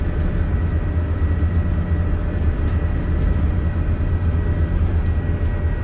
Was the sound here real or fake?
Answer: real